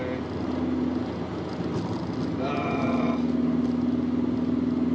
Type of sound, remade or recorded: recorded